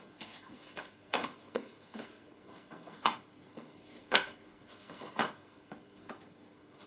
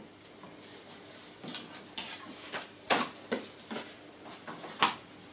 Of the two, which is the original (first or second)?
second